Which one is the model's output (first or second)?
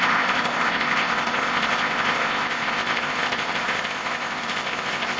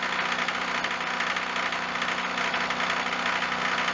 first